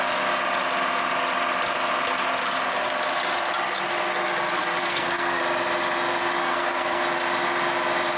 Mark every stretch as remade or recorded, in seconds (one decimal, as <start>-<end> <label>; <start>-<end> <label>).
0.0-4.8 recorded; 4.8-5.4 remade; 5.4-6.4 recorded; 6.4-7.0 remade; 7.0-8.2 recorded